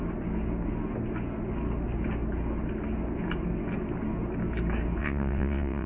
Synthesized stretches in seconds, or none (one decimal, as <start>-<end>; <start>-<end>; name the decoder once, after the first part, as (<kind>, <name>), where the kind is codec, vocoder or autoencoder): 5.0-5.9 (vocoder, WaveNeXt)